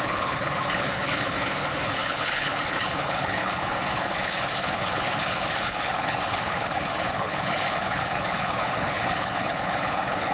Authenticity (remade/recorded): remade